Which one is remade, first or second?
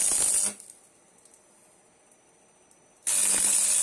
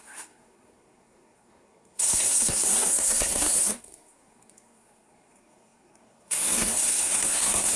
second